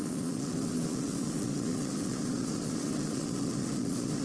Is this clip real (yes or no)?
no